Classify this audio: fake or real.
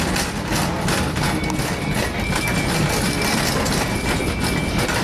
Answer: real